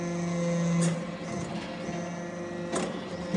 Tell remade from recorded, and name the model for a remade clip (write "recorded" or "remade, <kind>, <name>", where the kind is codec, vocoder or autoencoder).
recorded